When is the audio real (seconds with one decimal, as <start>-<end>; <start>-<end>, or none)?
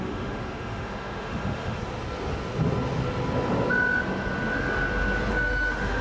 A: 1.8-5.3